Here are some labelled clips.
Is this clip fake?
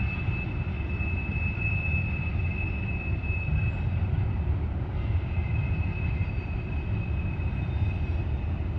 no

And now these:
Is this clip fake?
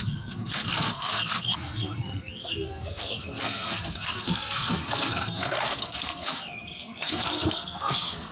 yes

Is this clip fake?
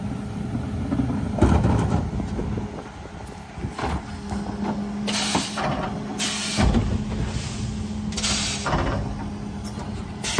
no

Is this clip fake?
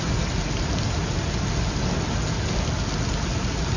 no